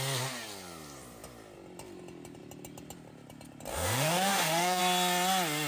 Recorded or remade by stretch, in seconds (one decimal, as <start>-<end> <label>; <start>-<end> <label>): 0.0-3.7 recorded; 3.7-4.8 remade; 4.8-5.7 recorded